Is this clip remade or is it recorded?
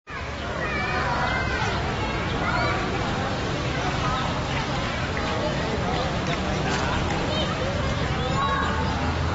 recorded